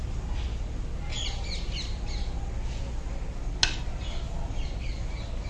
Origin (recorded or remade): recorded